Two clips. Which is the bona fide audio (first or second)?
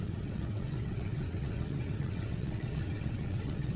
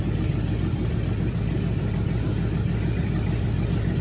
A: second